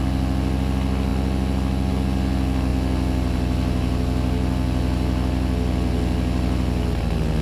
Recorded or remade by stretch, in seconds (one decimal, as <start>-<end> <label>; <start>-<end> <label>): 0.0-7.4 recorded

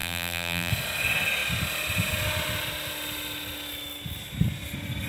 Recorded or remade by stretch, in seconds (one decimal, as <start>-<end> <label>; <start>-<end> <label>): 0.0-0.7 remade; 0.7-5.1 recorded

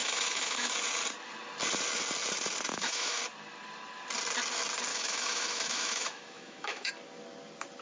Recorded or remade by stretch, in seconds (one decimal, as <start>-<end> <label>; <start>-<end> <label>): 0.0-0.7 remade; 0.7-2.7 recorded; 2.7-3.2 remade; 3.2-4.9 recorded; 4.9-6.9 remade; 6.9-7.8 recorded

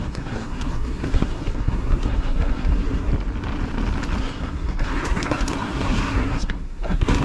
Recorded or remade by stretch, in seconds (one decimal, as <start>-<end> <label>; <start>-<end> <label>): 0.0-3.1 remade; 3.1-4.2 recorded; 4.2-7.2 remade

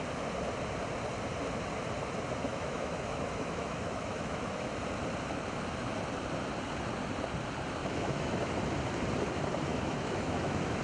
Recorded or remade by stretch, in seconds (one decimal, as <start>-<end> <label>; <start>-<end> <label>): 0.0-2.5 recorded; 2.5-4.7 remade; 4.7-7.8 recorded; 7.8-8.5 remade; 8.5-9.7 recorded; 9.7-10.8 remade

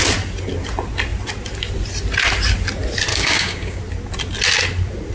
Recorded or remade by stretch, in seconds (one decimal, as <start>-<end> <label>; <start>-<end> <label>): 0.0-3.1 recorded; 3.1-3.8 remade; 3.8-5.1 recorded

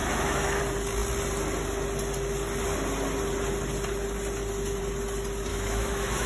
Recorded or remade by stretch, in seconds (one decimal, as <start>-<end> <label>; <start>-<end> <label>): 0.0-0.6 remade; 0.6-5.5 recorded; 5.5-6.3 remade